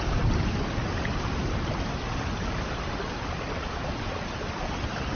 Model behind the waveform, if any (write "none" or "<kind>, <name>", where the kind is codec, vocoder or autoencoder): none